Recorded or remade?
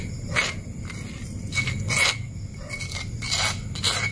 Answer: recorded